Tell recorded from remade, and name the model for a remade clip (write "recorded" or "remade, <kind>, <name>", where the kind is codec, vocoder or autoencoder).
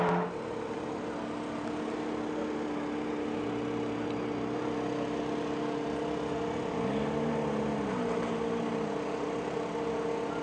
recorded